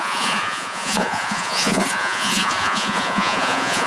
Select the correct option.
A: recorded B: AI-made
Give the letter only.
B